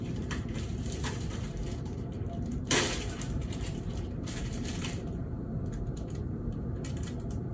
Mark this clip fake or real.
fake